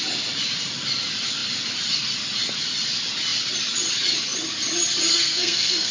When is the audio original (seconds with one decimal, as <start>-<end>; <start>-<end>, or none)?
0.0-5.1

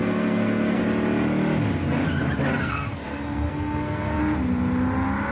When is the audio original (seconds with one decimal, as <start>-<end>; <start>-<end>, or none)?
0.8-2.5; 4.2-5.3